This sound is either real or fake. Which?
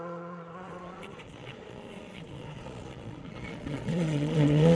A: fake